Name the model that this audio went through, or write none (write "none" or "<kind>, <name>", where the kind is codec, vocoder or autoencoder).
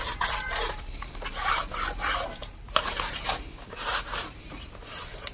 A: vocoder, BigVGAN v2